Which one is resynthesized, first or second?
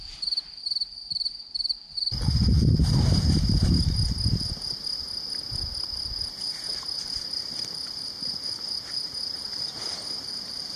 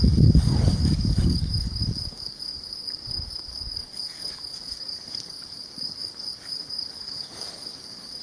second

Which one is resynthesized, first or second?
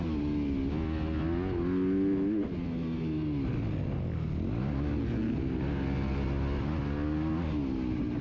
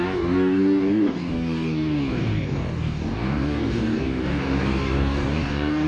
second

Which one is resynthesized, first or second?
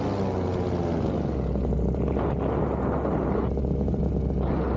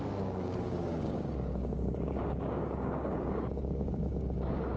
second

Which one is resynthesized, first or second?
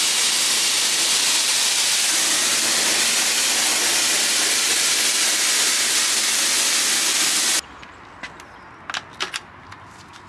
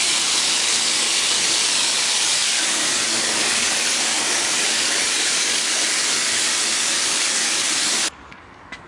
second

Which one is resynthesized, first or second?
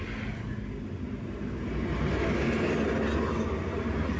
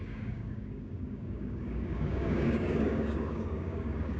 second